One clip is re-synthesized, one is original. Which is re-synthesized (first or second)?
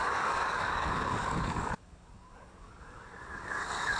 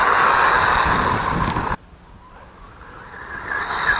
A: first